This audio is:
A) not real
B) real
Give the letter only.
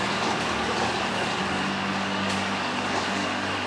A